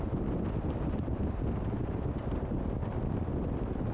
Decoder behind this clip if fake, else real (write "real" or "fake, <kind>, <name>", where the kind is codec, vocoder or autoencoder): real